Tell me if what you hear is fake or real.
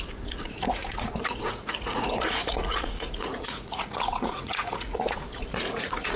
fake